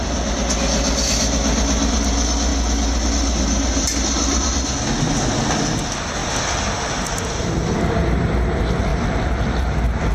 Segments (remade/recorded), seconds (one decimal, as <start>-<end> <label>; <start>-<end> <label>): 0.0-8.9 recorded; 8.9-10.1 remade